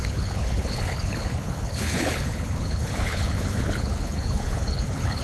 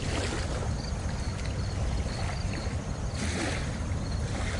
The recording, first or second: second